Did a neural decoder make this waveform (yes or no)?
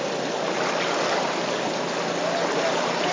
no